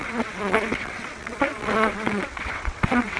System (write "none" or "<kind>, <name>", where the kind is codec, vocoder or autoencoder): vocoder, WaveNeXt